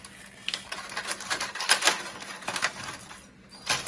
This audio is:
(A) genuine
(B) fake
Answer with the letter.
A